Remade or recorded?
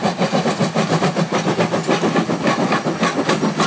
recorded